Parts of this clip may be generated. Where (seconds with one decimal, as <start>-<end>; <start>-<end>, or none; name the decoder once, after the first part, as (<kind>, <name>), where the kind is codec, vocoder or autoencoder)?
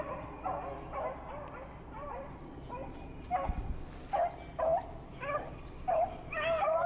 4.7-6.3 (vocoder, BigVGAN v2)